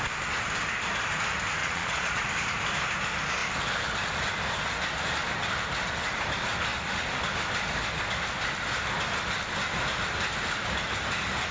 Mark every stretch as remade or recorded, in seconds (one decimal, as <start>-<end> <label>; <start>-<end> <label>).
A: 0.0-1.6 recorded; 1.6-2.2 remade; 2.2-11.5 recorded